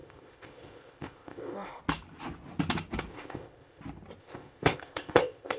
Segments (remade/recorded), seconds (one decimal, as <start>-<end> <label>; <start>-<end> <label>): 0.0-1.8 remade; 1.8-3.1 recorded; 3.1-3.8 remade; 3.8-4.2 recorded; 4.2-5.6 remade